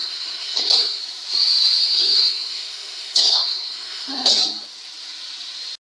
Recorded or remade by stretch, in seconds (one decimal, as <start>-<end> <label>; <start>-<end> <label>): 0.0-1.0 remade; 1.0-1.8 recorded; 1.8-4.3 remade; 4.3-5.9 recorded